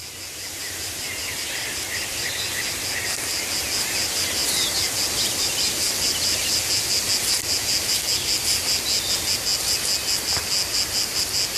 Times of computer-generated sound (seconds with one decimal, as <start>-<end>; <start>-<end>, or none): none